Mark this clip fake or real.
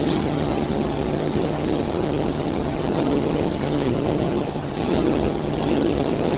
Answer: fake